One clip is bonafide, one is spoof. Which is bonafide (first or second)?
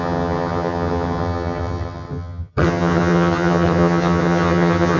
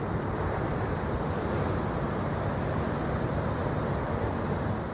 second